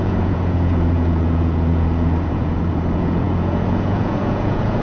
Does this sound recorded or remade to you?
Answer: remade